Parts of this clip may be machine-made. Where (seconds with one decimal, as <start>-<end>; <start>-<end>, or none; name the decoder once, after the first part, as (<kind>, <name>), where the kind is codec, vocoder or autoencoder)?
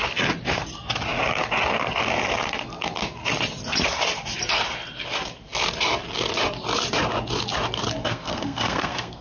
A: 8.0-9.2 (codec, SNAC)